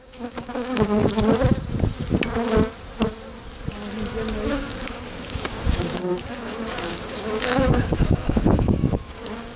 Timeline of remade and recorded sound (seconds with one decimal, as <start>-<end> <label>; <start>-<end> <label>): 0.0-1.0 remade; 1.0-4.5 recorded; 4.5-9.6 remade